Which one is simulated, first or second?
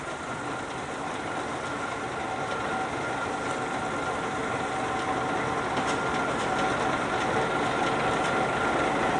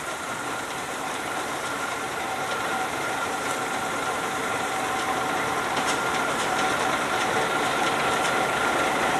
second